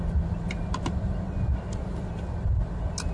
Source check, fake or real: real